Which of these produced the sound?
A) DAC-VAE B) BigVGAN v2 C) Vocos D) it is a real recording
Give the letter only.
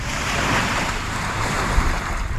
B